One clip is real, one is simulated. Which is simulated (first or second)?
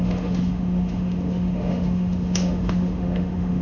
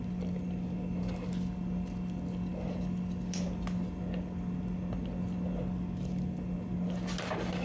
first